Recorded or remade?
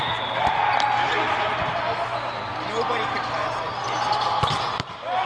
recorded